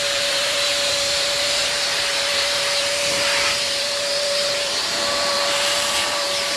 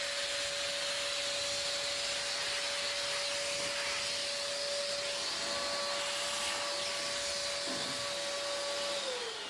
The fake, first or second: first